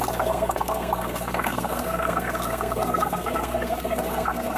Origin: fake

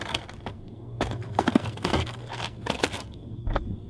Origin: fake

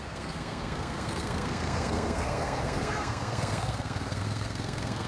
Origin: fake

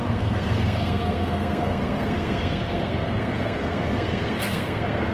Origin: fake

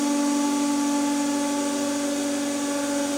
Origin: real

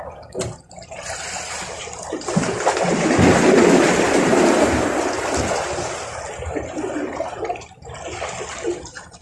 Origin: real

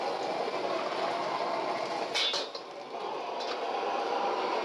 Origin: real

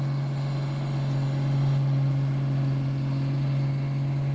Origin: real